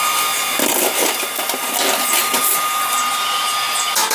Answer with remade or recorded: recorded